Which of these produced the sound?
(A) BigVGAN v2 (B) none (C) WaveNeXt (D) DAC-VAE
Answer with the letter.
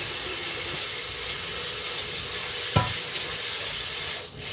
B